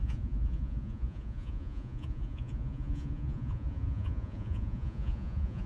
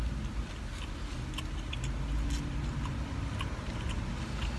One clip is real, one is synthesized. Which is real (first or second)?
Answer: second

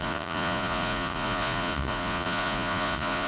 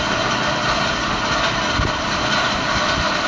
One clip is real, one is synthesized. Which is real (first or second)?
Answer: second